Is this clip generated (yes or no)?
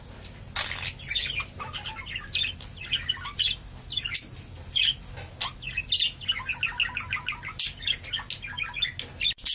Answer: no